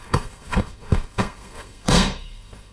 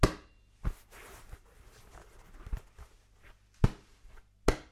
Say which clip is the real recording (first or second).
second